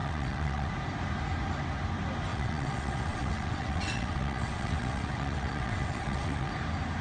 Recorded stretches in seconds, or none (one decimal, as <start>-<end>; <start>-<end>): 0.7-2.3; 6.5-7.0